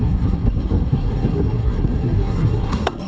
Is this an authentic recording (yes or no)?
no